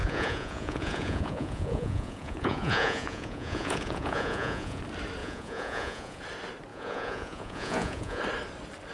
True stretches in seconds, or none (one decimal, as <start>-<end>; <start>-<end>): 4.8-5.2; 6.2-6.7; 8.2-8.9